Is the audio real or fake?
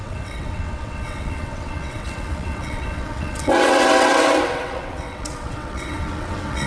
fake